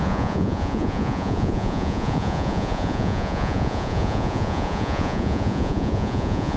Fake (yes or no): yes